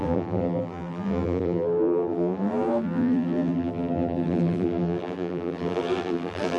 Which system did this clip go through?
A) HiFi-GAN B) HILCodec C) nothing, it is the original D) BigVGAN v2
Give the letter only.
D